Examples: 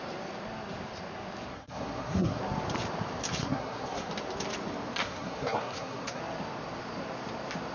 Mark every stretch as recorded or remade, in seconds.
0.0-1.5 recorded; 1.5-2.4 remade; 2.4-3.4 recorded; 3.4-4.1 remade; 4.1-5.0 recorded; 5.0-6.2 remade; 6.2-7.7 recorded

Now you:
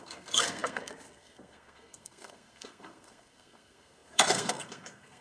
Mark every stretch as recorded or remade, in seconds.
0.0-5.2 remade